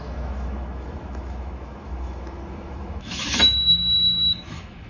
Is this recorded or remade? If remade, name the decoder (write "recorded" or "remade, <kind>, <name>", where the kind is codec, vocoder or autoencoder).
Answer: remade, autoencoder, DAC-VAE